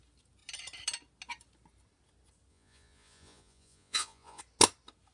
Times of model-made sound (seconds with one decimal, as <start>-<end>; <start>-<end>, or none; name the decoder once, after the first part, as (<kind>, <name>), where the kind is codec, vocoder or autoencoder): 2.5-4.4 (vocoder, Vocos)